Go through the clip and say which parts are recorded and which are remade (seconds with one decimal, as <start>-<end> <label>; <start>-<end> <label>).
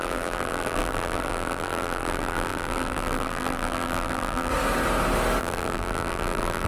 0.0-4.5 remade; 4.5-5.4 recorded; 5.4-6.7 remade